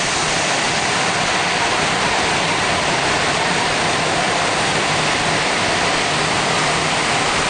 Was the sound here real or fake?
fake